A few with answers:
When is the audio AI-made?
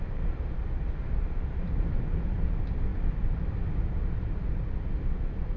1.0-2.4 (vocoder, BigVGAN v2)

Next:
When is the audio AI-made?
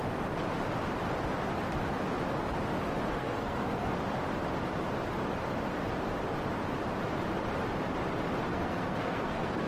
3.1-3.9 (codec, SNAC); 8.5-9.7